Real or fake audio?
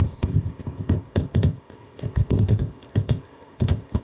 fake